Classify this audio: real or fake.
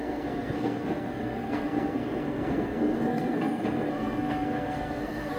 fake